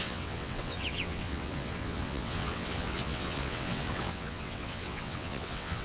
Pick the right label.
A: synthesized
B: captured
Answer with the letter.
A